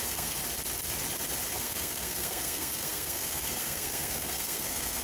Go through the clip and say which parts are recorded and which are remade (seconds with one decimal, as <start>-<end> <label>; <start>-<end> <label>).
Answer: 0.0-0.4 remade; 0.4-1.6 recorded; 1.6-5.0 remade